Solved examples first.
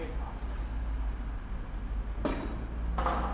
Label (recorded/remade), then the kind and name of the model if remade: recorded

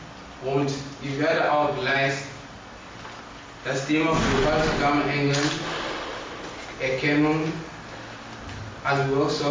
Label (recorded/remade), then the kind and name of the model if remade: recorded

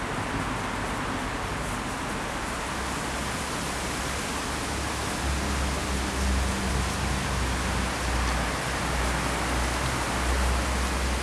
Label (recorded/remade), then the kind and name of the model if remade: recorded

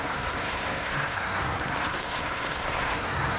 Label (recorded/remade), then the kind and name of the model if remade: remade, codec, SNAC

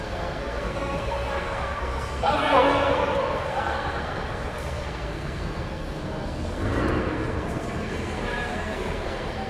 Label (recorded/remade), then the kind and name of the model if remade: remade, codec, SNAC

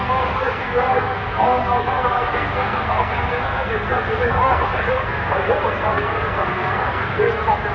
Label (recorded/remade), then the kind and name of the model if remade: remade, codec, SNAC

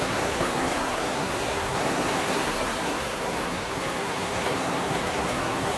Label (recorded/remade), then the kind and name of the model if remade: remade, codec, SNAC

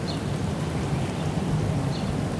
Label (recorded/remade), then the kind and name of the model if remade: recorded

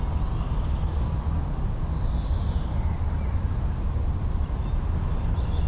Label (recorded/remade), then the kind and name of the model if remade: recorded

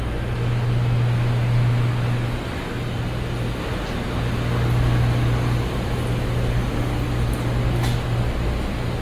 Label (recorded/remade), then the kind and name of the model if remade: recorded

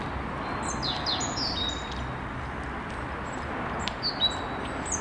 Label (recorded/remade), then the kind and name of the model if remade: recorded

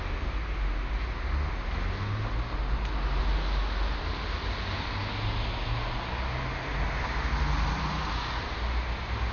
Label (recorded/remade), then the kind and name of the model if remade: recorded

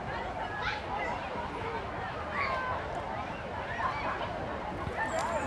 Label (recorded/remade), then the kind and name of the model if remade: recorded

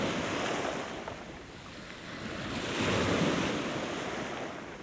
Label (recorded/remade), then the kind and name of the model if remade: recorded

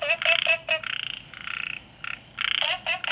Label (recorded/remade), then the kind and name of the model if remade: recorded